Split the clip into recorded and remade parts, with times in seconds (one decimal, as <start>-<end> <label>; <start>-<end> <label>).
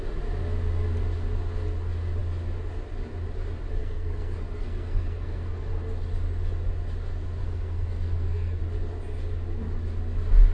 0.0-3.8 recorded; 3.8-5.7 remade; 5.7-7.4 recorded; 7.4-8.6 remade; 8.6-10.5 recorded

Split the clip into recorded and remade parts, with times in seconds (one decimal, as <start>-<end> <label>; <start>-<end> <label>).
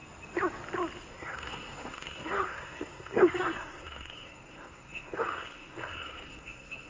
0.0-1.1 recorded; 1.1-6.9 remade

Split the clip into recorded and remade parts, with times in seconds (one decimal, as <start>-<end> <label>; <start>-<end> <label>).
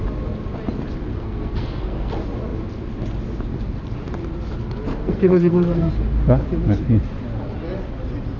0.0-1.1 recorded; 1.1-2.1 remade; 2.1-4.9 recorded; 4.9-5.9 remade; 5.9-8.4 recorded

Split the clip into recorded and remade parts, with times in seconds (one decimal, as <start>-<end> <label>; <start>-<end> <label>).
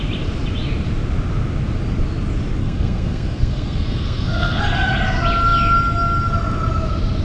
0.0-2.6 recorded; 2.6-4.6 remade; 4.6-7.2 recorded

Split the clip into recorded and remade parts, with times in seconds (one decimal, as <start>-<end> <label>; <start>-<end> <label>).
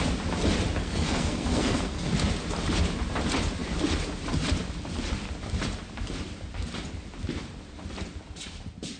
0.0-0.8 recorded; 0.8-2.1 remade; 2.1-9.0 recorded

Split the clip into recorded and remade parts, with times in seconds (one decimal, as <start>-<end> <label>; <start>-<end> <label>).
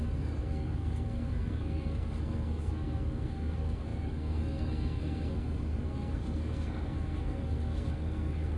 0.0-8.6 remade